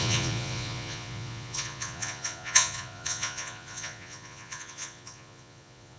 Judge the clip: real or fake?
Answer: fake